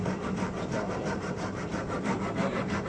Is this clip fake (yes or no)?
yes